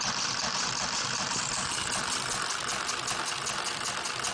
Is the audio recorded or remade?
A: recorded